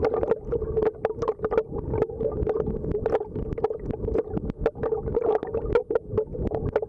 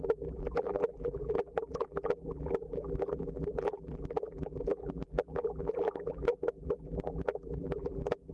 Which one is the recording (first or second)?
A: first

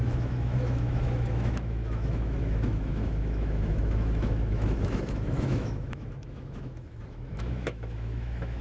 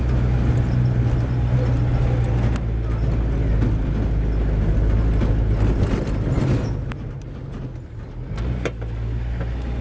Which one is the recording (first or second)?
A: second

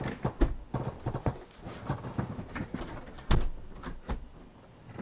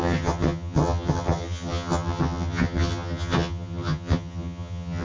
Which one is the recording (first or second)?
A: first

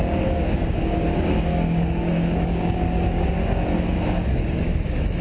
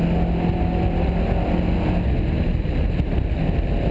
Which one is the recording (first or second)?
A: second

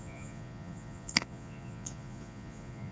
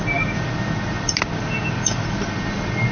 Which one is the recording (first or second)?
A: second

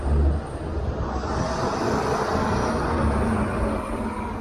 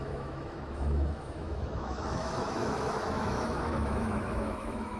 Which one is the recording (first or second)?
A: first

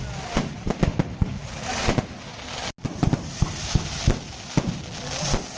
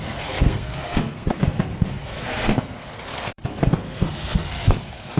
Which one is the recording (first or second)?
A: first